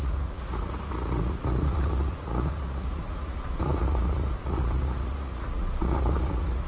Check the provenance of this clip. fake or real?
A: fake